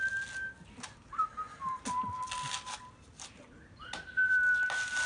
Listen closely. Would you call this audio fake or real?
real